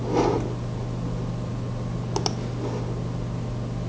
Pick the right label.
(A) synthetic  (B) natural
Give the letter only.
B